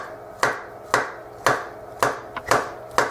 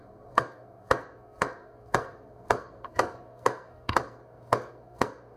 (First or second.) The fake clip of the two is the second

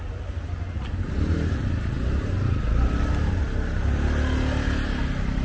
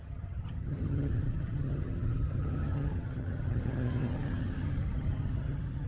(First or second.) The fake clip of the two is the second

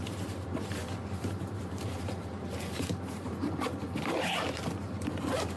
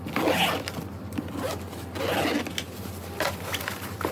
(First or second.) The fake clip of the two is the first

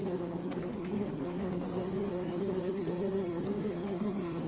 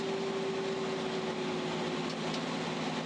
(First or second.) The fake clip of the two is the first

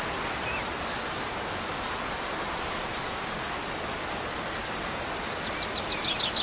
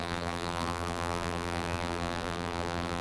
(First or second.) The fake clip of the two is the second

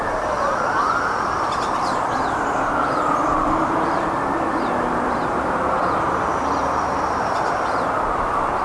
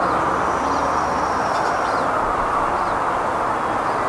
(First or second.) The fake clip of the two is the first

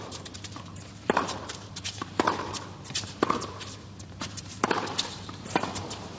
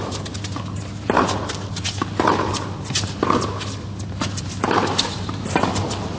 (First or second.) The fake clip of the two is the first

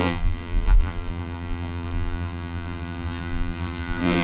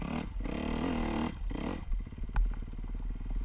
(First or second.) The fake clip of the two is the first